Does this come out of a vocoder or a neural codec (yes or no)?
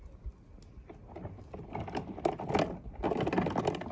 no